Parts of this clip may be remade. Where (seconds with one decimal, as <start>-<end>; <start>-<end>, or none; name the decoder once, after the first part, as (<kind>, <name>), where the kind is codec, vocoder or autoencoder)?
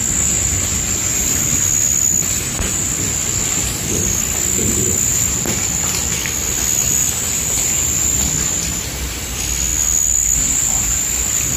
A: 5.1-5.9 (vocoder, BigVGAN v2)